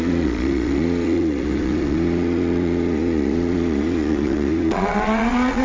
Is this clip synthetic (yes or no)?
yes